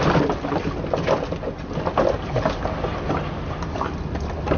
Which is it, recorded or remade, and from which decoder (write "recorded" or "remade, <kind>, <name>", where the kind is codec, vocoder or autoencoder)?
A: recorded